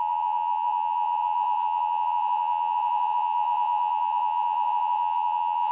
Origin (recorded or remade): remade